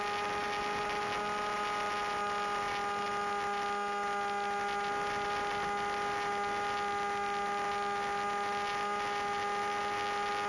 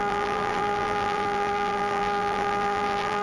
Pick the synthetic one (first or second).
second